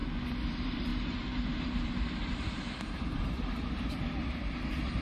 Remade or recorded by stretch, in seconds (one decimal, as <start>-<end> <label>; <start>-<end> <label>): 0.0-0.5 recorded; 0.5-5.0 remade